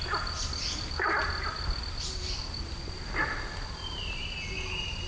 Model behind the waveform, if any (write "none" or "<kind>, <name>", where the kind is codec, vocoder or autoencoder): none